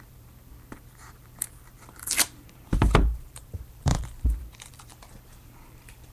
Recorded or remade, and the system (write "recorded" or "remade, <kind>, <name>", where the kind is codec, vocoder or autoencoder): remade, vocoder, BigVGAN v2